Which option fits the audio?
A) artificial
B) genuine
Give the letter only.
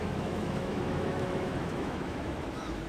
A